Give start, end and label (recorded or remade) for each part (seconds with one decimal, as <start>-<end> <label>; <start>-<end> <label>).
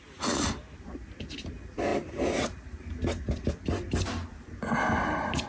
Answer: 0.0-5.5 recorded